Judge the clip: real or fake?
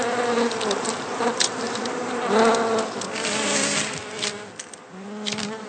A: real